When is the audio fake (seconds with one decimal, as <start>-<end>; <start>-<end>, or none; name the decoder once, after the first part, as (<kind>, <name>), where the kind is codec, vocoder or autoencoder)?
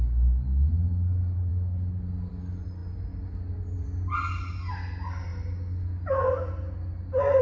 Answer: none